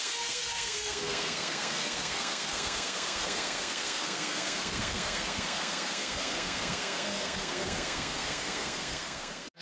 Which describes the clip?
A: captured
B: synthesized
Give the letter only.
B